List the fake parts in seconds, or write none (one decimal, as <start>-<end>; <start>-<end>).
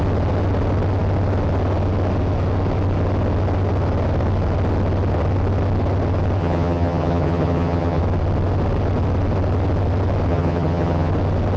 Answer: 6.4-8.0; 10.3-11.1